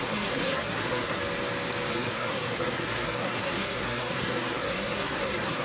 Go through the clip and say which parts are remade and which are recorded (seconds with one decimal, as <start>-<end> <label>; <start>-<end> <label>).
0.0-1.2 remade; 1.2-1.9 recorded; 1.9-5.6 remade